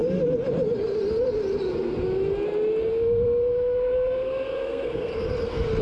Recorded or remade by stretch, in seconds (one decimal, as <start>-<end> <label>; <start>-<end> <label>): 0.0-2.9 recorded; 2.9-5.1 remade; 5.1-5.8 recorded